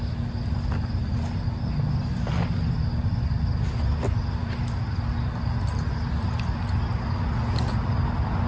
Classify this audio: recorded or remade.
recorded